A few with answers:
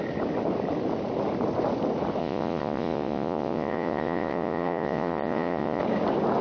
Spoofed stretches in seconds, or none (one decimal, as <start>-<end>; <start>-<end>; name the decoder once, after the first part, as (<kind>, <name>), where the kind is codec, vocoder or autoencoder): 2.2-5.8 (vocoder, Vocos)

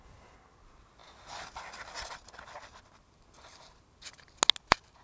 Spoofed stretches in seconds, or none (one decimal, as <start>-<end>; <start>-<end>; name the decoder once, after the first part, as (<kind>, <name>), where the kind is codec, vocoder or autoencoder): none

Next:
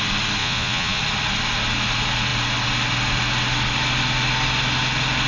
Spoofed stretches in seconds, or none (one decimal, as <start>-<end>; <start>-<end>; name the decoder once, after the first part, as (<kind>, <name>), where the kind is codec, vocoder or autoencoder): 0.4-1.0 (vocoder, Vocos)

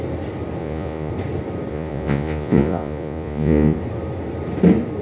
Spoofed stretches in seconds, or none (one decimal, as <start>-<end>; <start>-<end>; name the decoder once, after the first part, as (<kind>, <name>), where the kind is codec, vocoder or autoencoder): 0.6-1.1 (vocoder, Vocos); 1.7-3.8